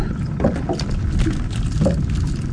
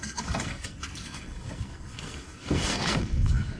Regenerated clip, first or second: second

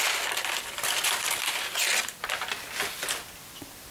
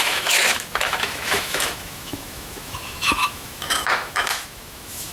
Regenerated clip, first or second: second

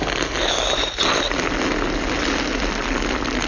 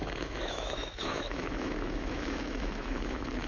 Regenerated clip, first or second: second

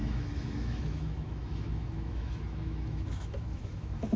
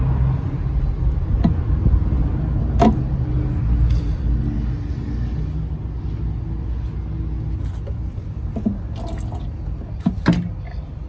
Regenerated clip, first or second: first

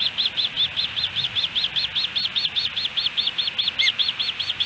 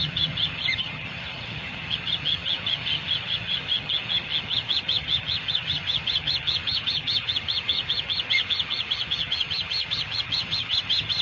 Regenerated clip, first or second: second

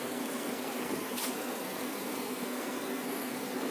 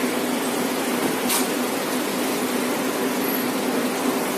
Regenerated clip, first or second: first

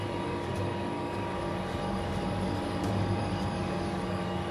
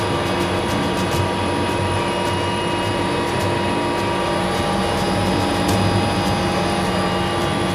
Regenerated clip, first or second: first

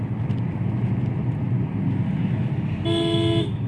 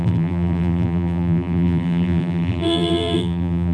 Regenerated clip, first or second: second